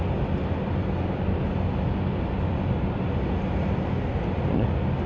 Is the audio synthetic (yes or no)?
no